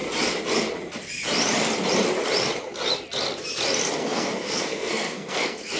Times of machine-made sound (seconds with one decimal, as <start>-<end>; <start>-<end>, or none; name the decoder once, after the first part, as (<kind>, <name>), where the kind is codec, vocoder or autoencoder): 4.0-5.8 (codec, SNAC)